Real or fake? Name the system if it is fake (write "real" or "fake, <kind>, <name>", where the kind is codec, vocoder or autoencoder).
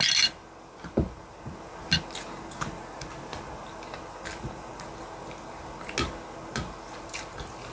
real